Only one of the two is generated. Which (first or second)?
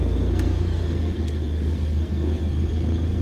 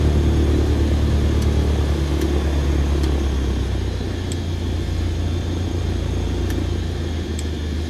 first